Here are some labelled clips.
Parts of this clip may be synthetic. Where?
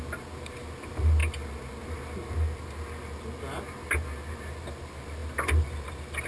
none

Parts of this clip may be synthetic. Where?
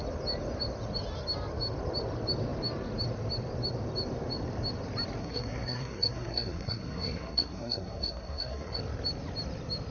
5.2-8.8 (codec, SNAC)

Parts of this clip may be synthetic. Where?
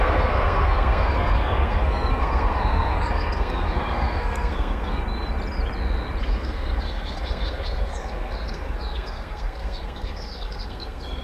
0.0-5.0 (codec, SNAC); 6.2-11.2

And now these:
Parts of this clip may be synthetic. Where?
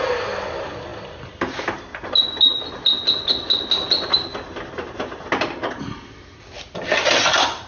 none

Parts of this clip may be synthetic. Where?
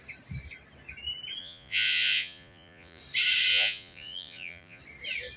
1.4-3.0 (vocoder, Vocos); 3.5-4.8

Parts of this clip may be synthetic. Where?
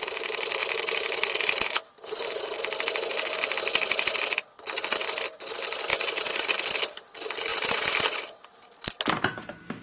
5.9-6.5 (vocoder, BigVGAN v2); 7.5-8.8